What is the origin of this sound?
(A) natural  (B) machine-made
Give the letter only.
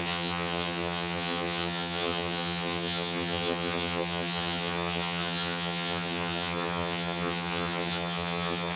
B